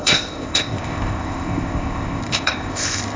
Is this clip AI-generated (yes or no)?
yes